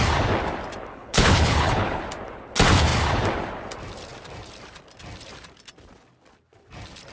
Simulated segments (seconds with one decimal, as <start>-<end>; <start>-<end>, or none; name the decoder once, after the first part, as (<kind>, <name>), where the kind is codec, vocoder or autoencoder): 0.9-2.0 (codec, HILCodec)